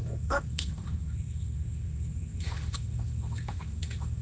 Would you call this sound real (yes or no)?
no